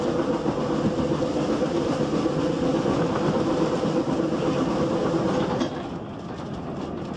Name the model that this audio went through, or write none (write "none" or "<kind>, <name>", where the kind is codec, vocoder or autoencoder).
none